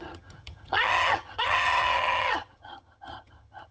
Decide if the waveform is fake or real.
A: fake